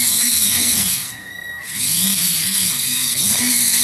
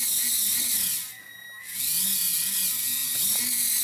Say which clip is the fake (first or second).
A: first